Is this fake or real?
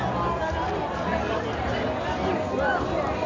real